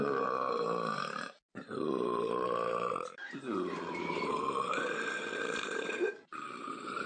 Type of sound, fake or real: fake